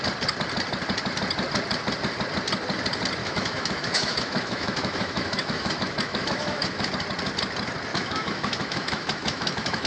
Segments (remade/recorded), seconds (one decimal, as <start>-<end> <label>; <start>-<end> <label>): 0.0-3.2 recorded; 3.2-6.9 remade; 6.9-7.9 recorded; 7.9-9.9 remade